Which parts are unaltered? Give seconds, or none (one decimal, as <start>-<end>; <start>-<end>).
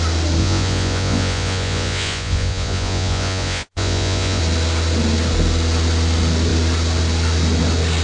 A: 0.0-0.4; 4.4-8.0